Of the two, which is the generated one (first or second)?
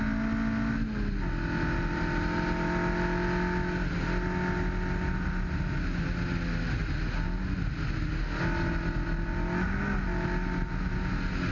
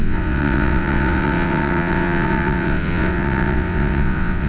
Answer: second